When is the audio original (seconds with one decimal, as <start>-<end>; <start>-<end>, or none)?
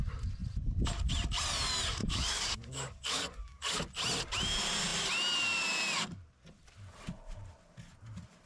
0.0-2.0; 3.8-8.5